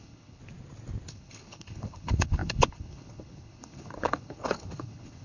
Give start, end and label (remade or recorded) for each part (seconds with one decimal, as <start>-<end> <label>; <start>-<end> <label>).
0.0-0.4 remade; 0.4-1.1 recorded; 1.1-5.2 remade